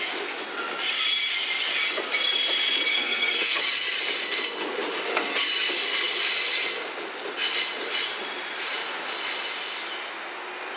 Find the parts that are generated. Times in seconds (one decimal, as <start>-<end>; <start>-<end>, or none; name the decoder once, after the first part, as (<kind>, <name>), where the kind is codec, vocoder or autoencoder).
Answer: 2.9-3.6 (codec, SNAC)